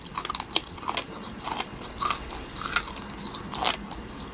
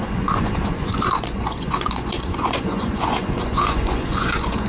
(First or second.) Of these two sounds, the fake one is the second